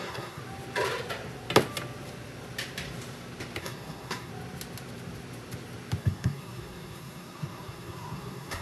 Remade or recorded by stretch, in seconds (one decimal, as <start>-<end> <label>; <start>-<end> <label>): 0.0-0.4 remade; 0.4-3.6 recorded; 3.6-4.3 remade; 4.3-6.0 recorded; 6.0-8.6 remade